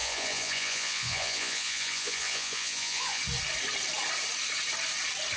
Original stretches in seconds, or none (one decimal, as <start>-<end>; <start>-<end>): 3.2-5.4